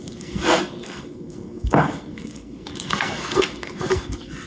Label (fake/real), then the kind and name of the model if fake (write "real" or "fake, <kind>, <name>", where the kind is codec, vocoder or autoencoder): fake, codec, SNAC